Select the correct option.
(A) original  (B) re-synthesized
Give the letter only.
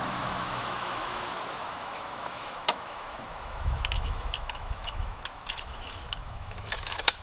B